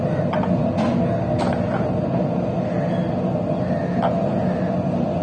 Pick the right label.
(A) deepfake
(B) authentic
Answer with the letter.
B